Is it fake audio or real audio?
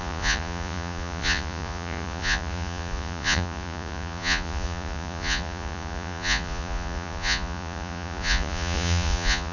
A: fake